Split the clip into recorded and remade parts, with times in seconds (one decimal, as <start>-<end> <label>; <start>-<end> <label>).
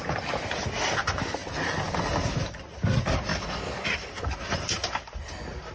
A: 0.0-3.3 recorded; 3.3-4.1 remade; 4.1-5.7 recorded